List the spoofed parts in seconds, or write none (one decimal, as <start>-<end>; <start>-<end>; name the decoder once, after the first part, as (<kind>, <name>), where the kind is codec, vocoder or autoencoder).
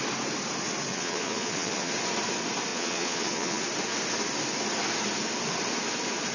0.9-1.9 (vocoder, Vocos); 2.7-3.6